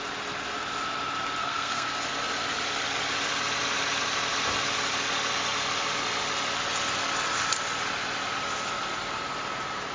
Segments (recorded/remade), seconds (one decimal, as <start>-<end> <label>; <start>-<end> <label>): 0.0-1.4 recorded; 1.4-1.9 remade; 1.9-9.9 recorded